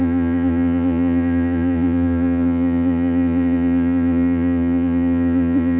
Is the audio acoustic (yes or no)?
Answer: no